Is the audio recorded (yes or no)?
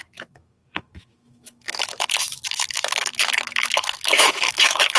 no